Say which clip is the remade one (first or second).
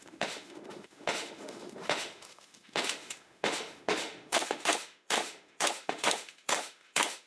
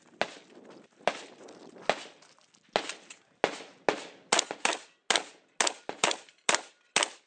first